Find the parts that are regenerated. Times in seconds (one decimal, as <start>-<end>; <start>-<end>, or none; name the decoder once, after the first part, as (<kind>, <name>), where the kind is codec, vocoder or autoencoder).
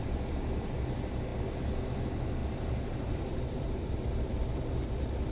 2.4-4.5 (vocoder, BigVGAN v2)